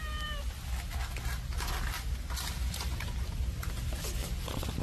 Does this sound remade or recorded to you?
recorded